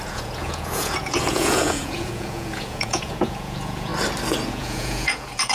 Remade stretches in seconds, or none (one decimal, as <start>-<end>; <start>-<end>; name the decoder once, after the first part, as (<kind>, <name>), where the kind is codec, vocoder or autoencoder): 0.0-3.9 (vocoder, Vocos); 4.5-5.5